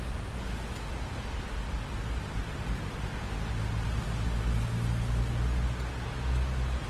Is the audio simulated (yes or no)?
no